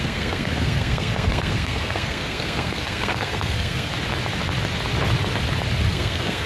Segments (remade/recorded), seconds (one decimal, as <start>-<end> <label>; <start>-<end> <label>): 0.0-3.9 remade; 3.9-5.9 recorded; 5.9-6.5 remade